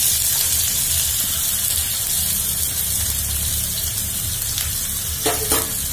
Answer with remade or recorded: recorded